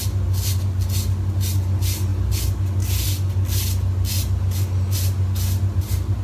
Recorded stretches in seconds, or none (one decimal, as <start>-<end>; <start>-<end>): 0.0-6.2